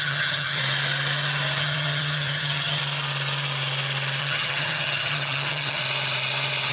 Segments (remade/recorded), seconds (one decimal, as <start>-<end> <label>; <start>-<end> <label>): 0.0-0.6 remade; 0.6-1.6 recorded; 1.6-2.8 remade; 2.8-4.2 recorded; 4.2-5.8 remade; 5.8-6.7 recorded